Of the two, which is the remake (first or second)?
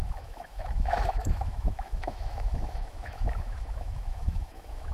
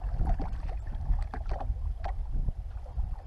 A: first